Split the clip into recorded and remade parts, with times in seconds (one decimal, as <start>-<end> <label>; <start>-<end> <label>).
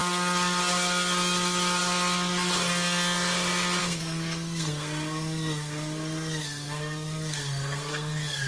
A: 0.0-3.8 recorded; 3.8-8.5 remade